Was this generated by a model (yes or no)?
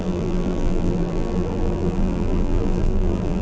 yes